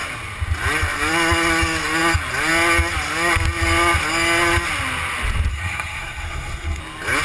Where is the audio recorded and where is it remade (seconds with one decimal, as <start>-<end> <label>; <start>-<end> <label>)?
0.0-5.5 recorded; 5.5-6.8 remade; 6.8-7.2 recorded